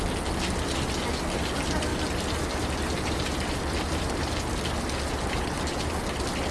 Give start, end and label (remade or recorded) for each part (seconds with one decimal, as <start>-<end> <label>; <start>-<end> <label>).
0.0-6.5 recorded